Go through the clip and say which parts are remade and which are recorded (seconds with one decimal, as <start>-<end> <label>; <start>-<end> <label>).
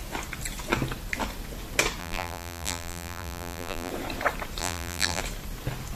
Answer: 0.0-2.0 recorded; 2.0-3.9 remade; 3.9-4.6 recorded; 4.6-5.2 remade; 5.2-6.0 recorded